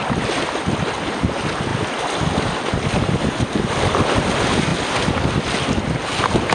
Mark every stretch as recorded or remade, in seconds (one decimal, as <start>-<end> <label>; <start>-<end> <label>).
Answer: 0.0-6.5 recorded